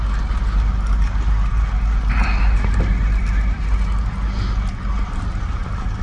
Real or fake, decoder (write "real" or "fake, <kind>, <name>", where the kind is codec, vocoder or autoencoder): real